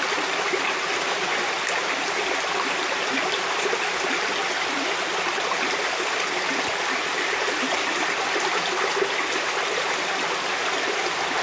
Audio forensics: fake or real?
real